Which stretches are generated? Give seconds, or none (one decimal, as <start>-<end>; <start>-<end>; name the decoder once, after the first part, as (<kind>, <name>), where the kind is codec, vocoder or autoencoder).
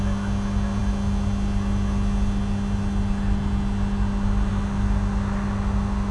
none